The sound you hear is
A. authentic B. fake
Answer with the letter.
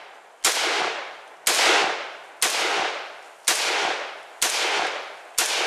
A